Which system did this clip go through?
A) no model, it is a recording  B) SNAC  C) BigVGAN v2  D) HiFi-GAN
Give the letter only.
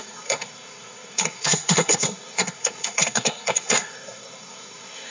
B